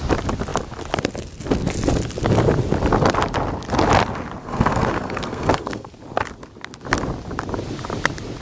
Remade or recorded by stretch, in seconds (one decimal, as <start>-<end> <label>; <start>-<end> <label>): 0.0-4.4 recorded; 4.4-5.9 remade; 5.9-8.4 recorded